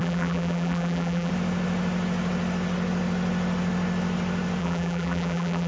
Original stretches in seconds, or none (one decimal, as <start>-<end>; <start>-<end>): 1.3-4.6